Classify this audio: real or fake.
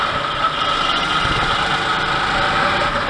real